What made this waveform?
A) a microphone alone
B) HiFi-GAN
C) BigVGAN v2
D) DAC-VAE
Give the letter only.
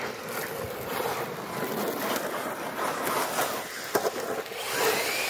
A